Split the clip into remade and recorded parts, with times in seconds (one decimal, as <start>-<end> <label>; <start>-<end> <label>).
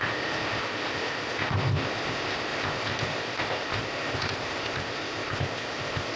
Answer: 0.0-6.2 remade